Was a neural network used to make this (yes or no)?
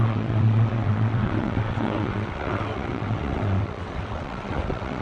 yes